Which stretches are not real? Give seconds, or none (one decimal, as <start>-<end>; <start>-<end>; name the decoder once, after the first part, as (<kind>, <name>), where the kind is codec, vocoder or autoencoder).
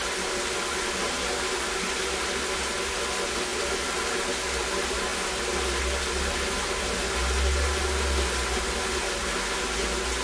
none